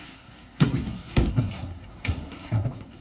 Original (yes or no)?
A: no